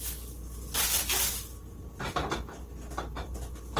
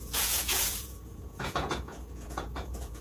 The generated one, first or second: second